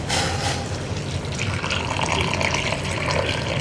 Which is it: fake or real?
real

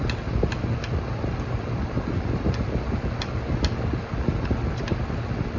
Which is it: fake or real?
real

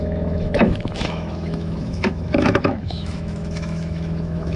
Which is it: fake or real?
fake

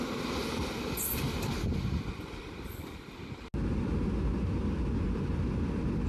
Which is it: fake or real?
real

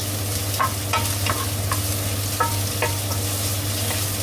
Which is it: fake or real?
real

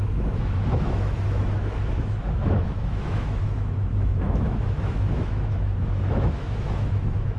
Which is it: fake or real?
fake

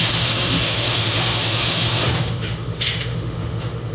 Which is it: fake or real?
fake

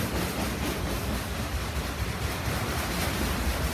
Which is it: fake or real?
real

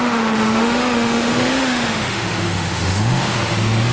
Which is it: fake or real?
fake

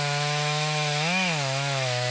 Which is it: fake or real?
fake